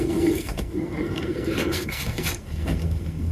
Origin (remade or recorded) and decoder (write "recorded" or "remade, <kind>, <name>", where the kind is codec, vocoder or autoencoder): remade, codec, SNAC